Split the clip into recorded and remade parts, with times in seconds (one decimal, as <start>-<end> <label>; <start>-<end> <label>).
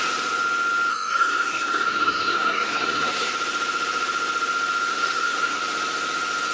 0.0-0.9 recorded; 0.9-3.3 remade; 3.3-4.9 recorded; 4.9-5.6 remade; 5.6-6.5 recorded